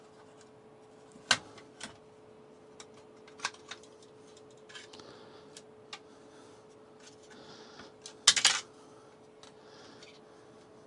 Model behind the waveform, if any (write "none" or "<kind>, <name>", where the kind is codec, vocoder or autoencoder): none